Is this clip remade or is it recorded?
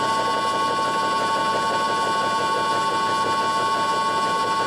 recorded